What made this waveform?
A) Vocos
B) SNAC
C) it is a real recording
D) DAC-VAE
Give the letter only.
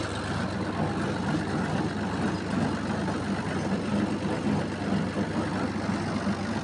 C